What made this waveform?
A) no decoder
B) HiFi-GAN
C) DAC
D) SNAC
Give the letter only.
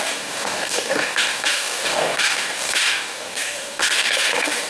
C